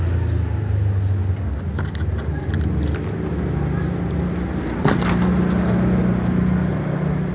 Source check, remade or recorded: recorded